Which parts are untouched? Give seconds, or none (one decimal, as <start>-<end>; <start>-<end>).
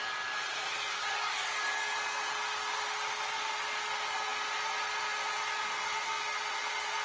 0.0-7.0